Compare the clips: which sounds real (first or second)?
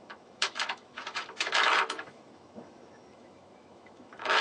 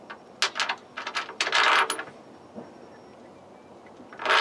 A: second